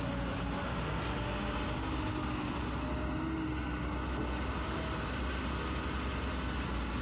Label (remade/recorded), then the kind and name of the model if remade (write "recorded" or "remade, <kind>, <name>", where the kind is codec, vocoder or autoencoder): recorded